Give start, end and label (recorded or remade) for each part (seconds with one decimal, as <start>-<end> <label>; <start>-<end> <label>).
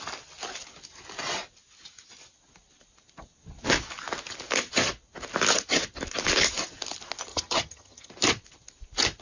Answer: 0.0-7.3 recorded; 7.3-8.1 remade; 8.1-9.2 recorded